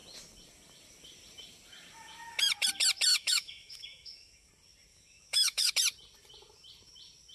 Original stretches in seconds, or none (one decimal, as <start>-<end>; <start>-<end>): 0.0-3.1; 4.5-4.9; 5.7-7.3